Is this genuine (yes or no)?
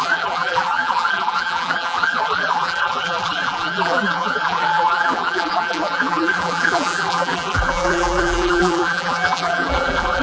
no